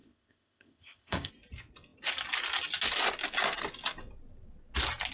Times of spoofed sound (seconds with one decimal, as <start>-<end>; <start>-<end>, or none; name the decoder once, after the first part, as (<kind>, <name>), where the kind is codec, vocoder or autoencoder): 0.0-1.3 (codec, ZipCodec)